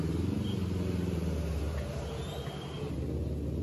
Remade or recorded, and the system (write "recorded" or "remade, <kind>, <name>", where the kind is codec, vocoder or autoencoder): recorded